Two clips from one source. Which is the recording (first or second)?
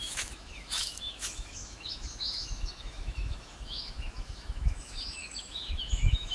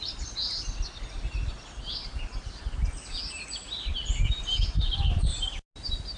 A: second